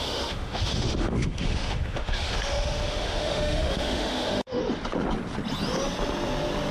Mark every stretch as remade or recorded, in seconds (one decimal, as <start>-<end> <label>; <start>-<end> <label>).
0.0-4.6 remade; 4.6-6.7 recorded